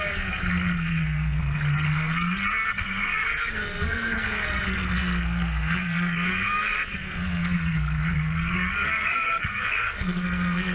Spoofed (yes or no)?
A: yes